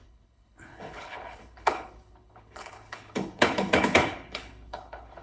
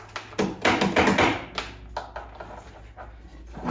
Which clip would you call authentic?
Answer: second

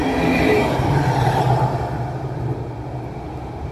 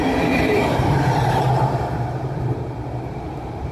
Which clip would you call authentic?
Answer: first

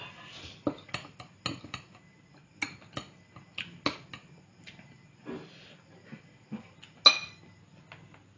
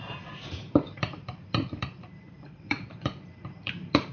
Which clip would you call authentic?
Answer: first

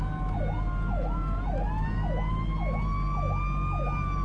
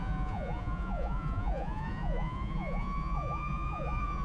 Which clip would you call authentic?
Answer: first